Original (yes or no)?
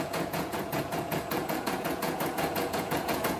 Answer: no